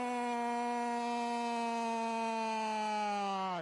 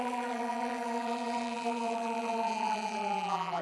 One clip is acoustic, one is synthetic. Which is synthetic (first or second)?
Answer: second